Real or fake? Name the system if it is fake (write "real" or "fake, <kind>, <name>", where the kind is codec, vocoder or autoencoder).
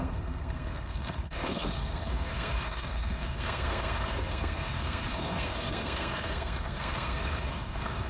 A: fake, codec, SNAC